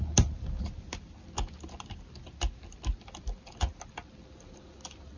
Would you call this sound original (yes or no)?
yes